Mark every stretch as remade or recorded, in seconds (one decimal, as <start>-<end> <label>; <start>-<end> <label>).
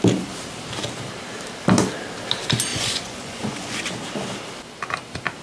0.0-2.7 recorded; 2.7-3.8 remade; 3.8-5.4 recorded